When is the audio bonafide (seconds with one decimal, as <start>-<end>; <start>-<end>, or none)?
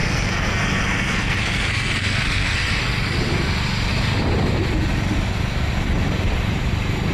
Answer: 2.8-7.1